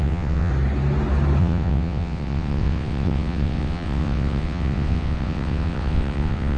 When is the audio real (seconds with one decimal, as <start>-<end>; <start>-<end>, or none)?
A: 0.5-1.4